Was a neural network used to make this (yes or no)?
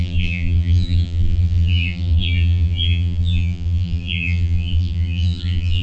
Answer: yes